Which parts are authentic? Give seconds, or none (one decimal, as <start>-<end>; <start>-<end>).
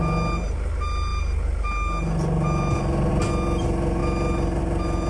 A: 0.0-5.1